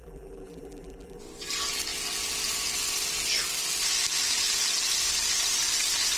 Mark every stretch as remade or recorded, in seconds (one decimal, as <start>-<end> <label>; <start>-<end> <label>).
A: 0.0-1.2 remade; 1.2-6.2 recorded